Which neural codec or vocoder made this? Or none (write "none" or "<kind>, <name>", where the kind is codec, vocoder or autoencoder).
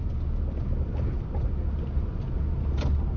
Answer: none